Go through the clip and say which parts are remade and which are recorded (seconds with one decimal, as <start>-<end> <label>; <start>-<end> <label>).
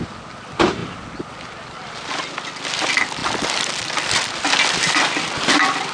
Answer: 0.0-5.9 recorded